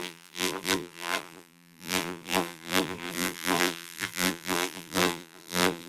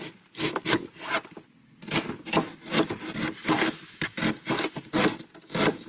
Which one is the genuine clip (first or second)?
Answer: second